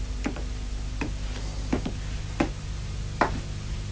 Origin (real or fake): real